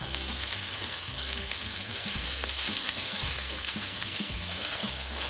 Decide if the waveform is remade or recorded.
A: remade